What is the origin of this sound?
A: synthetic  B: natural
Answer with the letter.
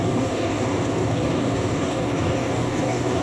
A